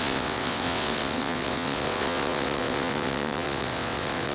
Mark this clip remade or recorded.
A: remade